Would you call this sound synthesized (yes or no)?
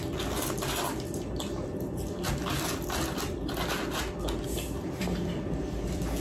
no